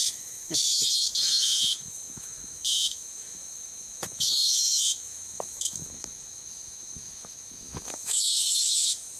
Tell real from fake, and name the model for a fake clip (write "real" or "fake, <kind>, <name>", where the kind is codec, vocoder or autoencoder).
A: fake, autoencoder, DAC-VAE